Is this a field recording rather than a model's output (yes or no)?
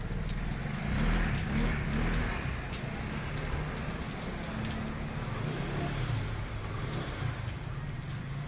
yes